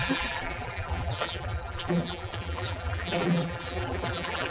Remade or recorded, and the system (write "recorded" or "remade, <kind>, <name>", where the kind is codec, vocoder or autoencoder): remade, vocoder, BigVGAN v2